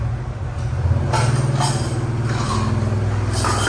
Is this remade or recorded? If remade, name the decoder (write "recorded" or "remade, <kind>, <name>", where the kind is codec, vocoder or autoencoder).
recorded